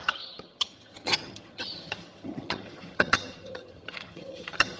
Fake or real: fake